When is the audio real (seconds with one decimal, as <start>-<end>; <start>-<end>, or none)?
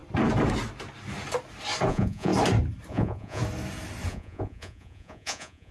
0.0-1.9; 2.3-2.9; 3.4-4.1